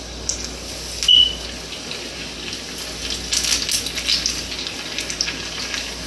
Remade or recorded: recorded